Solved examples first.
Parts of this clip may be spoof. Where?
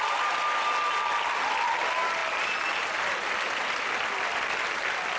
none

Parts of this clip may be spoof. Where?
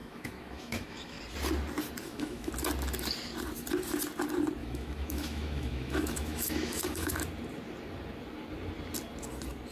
0.0-1.2 (autoencoder, DAC-VAE); 2.0-2.5; 4.6-7.1